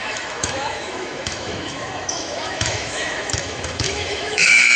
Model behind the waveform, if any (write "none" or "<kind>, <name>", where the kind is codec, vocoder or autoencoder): autoencoder, DAC-VAE